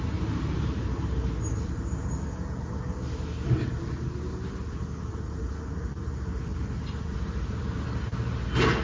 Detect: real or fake real